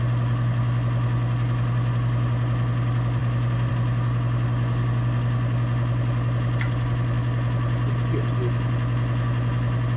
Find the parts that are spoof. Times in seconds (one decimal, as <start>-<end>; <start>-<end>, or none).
none